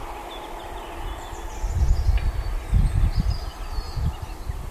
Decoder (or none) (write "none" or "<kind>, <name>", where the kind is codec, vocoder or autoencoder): none